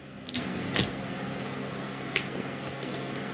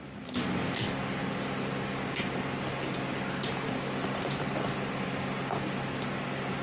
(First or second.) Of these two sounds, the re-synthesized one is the first